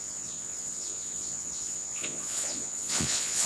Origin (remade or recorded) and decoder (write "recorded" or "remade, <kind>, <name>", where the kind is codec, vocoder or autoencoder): remade, vocoder, Vocos